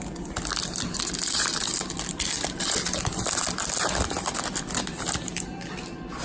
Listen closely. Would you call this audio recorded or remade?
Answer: recorded